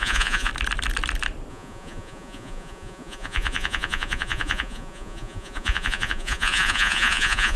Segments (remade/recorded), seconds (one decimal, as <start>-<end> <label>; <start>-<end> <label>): 0.0-0.5 remade; 0.5-1.5 recorded; 1.5-7.6 remade